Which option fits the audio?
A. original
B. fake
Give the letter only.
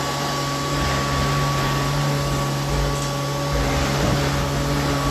A